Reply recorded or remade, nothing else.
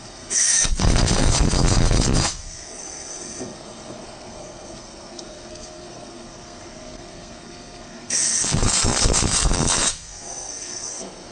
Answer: remade